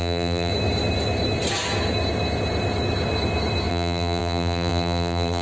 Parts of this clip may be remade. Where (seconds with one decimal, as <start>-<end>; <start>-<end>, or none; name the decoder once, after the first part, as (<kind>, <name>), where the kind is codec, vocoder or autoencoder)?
0.0-0.5 (vocoder, BigVGAN v2); 3.7-5.4